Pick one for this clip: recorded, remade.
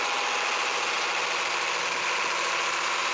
recorded